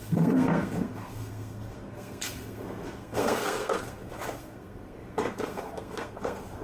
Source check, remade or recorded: remade